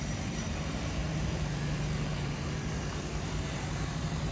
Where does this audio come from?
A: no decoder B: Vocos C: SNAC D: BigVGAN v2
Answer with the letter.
D